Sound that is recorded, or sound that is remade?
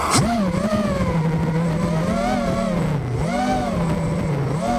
recorded